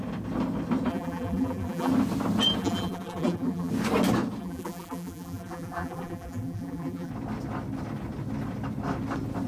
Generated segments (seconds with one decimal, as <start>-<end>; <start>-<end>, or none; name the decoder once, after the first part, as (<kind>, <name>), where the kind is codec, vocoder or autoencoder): 0.9-1.9 (vocoder, BigVGAN v2); 2.6-3.7; 4.4-7.1